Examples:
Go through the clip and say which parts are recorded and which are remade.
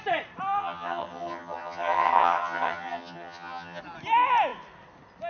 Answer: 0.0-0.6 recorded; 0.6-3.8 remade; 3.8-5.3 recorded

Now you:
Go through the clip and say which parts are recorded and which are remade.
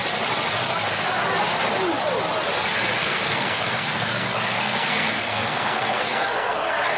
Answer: 0.0-3.0 recorded; 3.0-7.0 remade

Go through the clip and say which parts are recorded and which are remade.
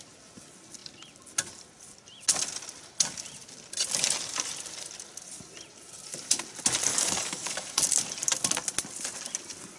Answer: 0.0-6.9 recorded; 6.9-7.8 remade; 7.8-9.8 recorded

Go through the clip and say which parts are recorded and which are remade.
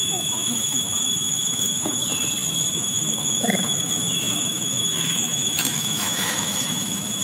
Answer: 0.0-2.0 remade; 2.0-2.7 recorded; 2.7-7.2 remade